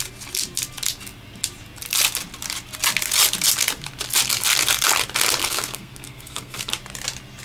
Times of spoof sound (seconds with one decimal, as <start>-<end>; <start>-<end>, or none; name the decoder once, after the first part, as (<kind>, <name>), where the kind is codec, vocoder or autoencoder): 5.4-6.7 (codec, SNAC)